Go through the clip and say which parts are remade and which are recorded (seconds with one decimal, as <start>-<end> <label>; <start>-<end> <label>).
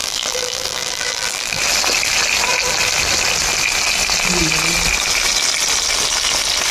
0.0-1.6 remade; 1.6-6.7 recorded